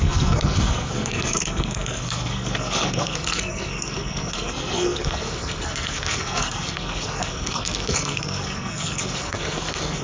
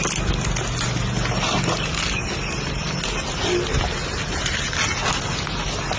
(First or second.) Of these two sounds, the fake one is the first